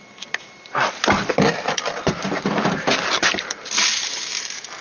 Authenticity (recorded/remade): recorded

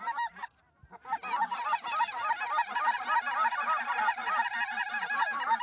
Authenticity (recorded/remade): recorded